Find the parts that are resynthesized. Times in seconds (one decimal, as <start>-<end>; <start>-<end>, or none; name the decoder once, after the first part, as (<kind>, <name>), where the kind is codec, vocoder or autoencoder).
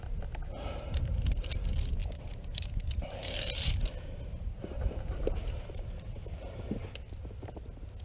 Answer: 2.0-6.8 (vocoder, BigVGAN v2)